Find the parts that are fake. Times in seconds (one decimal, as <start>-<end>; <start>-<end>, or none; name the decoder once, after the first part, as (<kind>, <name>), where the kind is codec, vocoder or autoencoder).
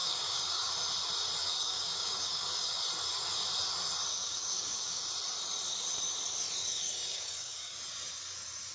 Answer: 0.0-0.7 (codec, DAC); 1.4-2.8; 4.1-5.0; 6.6-7.7